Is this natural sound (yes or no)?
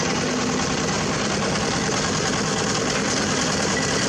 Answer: yes